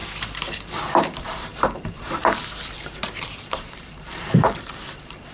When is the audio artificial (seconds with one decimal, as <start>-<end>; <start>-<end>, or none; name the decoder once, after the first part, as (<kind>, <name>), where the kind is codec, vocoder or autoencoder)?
0.7-5.3 (vocoder, BigVGAN v2)